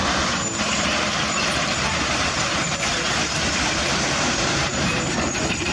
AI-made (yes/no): yes